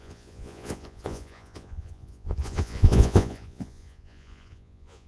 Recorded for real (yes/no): no